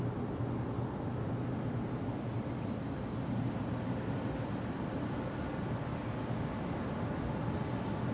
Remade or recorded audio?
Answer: recorded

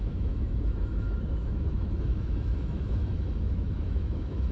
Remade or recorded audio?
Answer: remade